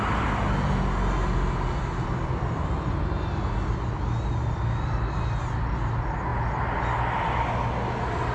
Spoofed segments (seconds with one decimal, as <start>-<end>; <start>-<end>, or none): none